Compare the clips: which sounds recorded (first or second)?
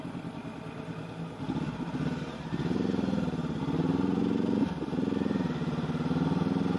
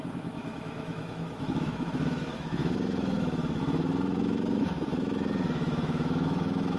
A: first